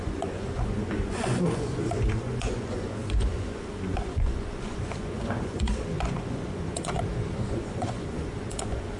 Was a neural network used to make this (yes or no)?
yes